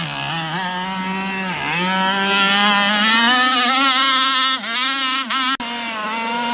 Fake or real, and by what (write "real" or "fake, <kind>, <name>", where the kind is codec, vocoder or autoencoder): real